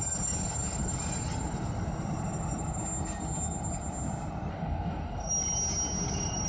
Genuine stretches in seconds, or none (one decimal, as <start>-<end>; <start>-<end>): 0.0-4.5; 5.3-6.5